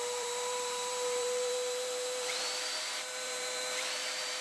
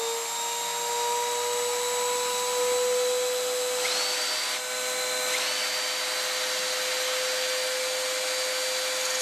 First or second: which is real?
second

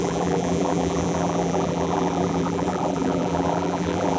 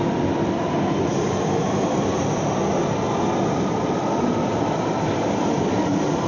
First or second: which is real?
second